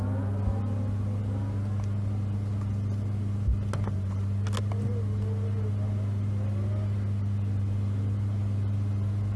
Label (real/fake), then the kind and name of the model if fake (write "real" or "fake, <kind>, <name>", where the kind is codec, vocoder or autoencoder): real